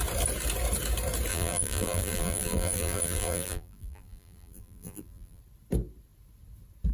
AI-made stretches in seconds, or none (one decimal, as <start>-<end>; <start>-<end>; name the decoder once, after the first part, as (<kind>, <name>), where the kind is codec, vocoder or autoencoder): 1.3-5.4 (vocoder, BigVGAN v2)